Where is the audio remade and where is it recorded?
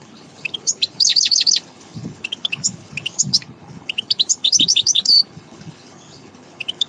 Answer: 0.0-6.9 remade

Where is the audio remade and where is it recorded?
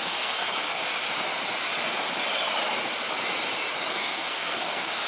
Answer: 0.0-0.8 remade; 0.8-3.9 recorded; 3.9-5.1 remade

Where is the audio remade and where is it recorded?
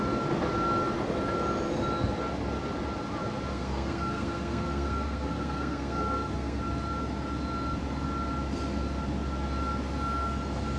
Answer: 0.0-3.5 recorded; 3.5-6.6 remade; 6.6-10.8 recorded